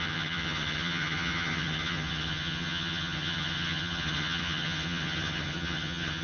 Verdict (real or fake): fake